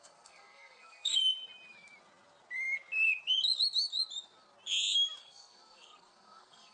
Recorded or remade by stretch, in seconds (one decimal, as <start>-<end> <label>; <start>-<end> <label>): 0.0-1.2 remade; 1.2-5.2 recorded; 5.2-6.7 remade